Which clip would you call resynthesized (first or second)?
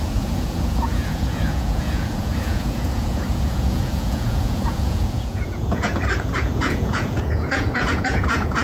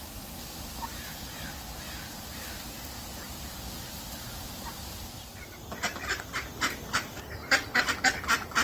first